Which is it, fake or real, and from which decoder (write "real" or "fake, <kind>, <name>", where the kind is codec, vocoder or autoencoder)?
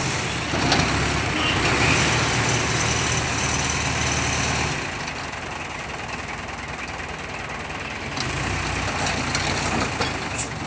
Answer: real